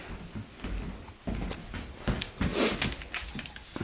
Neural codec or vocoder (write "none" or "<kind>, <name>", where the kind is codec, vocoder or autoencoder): none